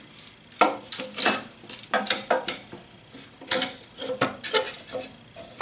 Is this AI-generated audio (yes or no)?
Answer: no